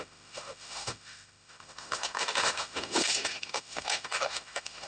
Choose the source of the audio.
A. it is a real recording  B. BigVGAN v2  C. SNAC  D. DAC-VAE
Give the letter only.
D